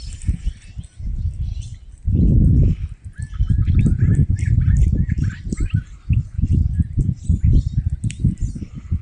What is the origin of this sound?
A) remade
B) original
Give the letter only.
B